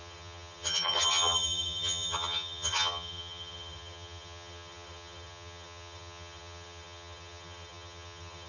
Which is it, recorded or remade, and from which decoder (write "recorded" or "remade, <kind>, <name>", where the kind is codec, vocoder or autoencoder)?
remade, vocoder, HiFi-GAN